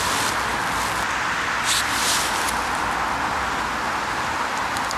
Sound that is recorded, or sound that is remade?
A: recorded